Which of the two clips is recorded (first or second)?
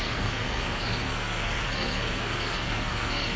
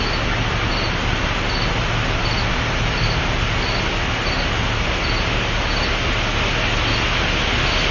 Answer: second